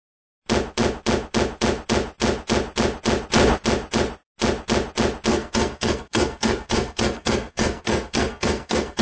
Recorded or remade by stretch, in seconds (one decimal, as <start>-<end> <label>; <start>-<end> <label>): 0.0-5.3 recorded; 5.3-9.0 remade